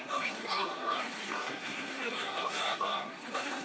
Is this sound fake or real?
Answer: fake